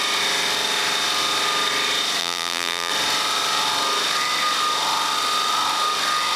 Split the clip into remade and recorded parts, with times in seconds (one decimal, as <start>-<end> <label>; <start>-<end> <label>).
0.0-2.2 recorded; 2.2-2.9 remade; 2.9-6.4 recorded